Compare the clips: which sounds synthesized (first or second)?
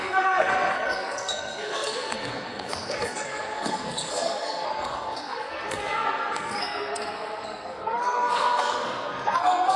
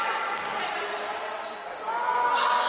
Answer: first